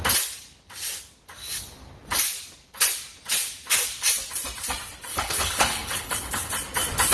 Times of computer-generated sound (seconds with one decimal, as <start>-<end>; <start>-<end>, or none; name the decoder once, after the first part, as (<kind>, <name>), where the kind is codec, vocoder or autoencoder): 5.1-6.5 (codec, HILCodec)

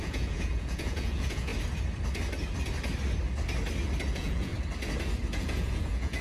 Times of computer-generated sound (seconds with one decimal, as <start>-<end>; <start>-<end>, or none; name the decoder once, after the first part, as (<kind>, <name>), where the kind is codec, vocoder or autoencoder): 0.0-1.5 (vocoder, Vocos); 4.1-4.5; 5.4-6.2

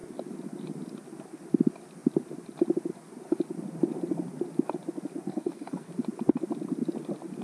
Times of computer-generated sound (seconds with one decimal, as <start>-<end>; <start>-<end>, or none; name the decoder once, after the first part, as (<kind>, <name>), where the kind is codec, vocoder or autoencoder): 5.3-5.9 (codec, SNAC)

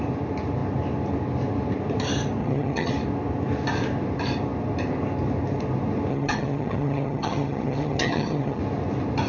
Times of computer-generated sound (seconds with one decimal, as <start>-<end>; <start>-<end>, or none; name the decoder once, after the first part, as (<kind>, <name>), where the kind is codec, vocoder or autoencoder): 2.4-2.9 (vocoder, HiFi-GAN); 6.1-8.6